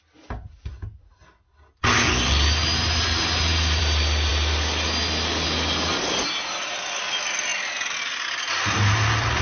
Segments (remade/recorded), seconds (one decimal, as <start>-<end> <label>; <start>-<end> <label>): 0.0-9.4 recorded